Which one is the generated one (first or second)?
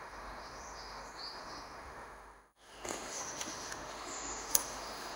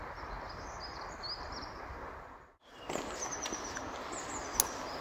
first